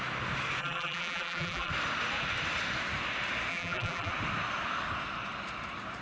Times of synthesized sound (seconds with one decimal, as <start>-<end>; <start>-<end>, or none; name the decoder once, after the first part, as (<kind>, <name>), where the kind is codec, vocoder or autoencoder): 0.6-1.7 (vocoder, BigVGAN v2); 3.5-4.1